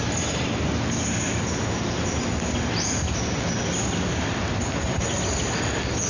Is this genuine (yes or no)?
yes